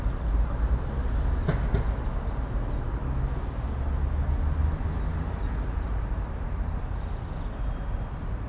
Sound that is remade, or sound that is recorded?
recorded